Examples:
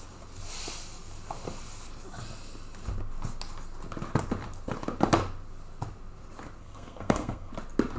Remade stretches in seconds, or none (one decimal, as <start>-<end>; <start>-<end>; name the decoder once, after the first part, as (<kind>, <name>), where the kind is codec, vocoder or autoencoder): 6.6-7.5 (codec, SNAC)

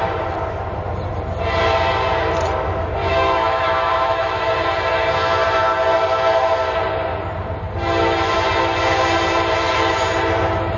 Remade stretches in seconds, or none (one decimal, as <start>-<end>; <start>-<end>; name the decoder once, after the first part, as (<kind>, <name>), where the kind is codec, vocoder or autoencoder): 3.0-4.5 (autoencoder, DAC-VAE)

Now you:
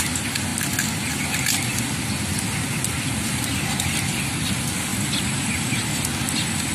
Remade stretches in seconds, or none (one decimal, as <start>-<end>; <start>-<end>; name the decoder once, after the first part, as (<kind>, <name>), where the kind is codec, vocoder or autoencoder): 4.9-6.0 (vocoder, BigVGAN v2)

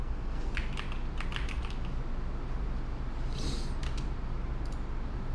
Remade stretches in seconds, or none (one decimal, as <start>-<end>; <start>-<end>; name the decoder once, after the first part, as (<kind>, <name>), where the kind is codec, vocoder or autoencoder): 0.0-0.5 (codec, SNAC)